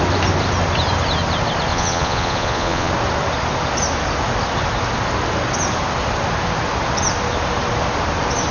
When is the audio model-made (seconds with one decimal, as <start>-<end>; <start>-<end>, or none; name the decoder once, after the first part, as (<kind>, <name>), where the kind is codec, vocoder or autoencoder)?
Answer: 1.7-2.9 (vocoder, Vocos)